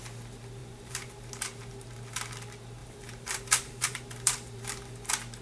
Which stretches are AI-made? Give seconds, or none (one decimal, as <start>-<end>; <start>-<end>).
0.6-1.3; 2.8-4.9

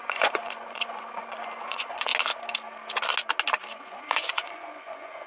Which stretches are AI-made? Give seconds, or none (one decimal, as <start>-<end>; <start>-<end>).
0.0-2.1; 3.7-5.3

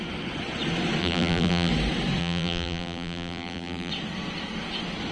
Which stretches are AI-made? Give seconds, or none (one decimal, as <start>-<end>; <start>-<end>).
1.0-1.7; 2.2-3.9

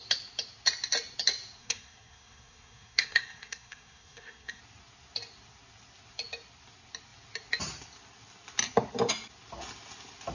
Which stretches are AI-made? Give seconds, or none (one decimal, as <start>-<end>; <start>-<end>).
1.6-4.6

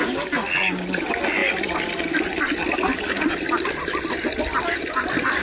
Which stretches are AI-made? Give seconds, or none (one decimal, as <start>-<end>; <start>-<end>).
none